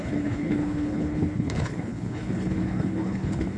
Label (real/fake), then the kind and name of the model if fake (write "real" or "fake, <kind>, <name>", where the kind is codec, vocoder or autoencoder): fake, codec, HILCodec